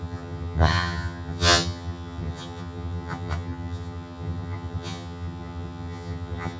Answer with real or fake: fake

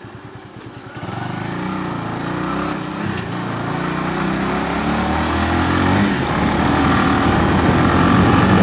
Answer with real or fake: real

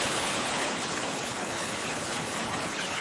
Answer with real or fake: fake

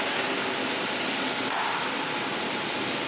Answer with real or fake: fake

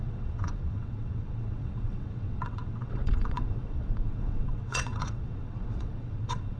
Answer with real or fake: fake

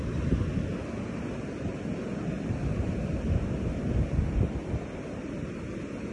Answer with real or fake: real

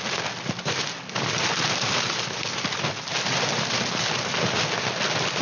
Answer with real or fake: real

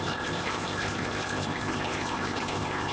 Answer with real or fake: fake